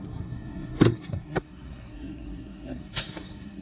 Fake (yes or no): yes